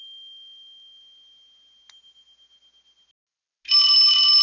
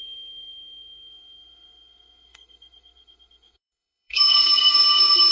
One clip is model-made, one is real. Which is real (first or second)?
first